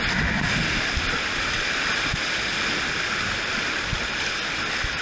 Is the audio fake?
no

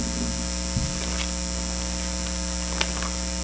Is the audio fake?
no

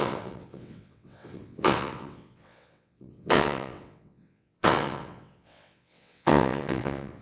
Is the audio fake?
yes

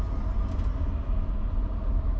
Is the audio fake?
no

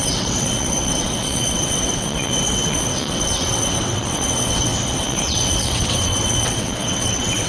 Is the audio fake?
yes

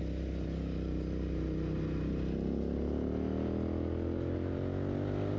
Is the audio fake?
no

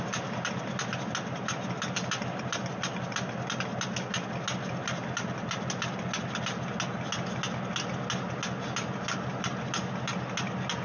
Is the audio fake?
no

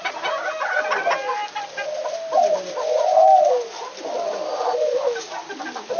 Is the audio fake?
no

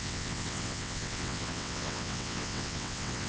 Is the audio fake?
yes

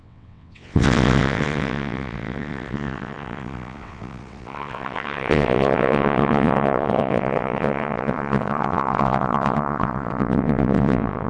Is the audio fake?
yes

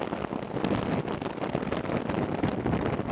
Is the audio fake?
no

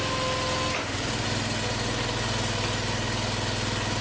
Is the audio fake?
no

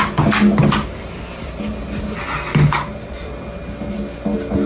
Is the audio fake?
no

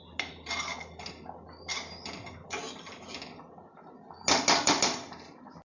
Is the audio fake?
no